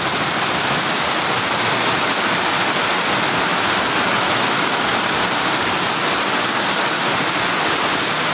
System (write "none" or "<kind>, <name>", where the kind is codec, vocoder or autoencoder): none